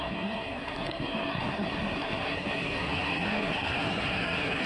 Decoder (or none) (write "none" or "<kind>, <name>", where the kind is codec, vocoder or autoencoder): codec, SNAC